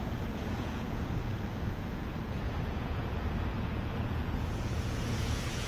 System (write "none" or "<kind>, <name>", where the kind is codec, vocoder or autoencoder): vocoder, Vocos